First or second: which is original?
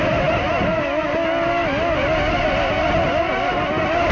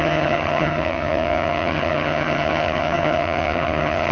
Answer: first